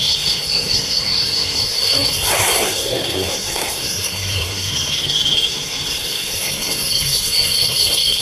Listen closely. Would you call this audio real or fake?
fake